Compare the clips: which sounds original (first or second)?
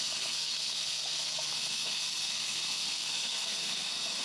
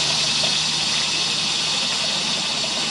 second